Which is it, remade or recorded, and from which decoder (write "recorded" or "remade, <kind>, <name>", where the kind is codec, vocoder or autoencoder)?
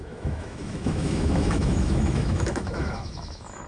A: remade, autoencoder, DAC-VAE